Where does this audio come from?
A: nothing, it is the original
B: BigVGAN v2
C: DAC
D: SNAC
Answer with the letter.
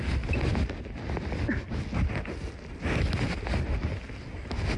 A